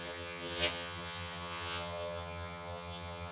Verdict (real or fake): fake